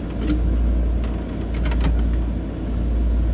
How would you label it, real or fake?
real